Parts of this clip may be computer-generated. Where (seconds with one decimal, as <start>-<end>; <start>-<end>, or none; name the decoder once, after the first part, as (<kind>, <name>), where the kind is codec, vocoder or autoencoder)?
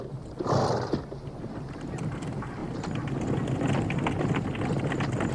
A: none